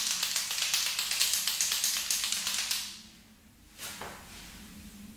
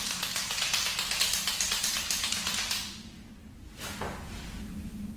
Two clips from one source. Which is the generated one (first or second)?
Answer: second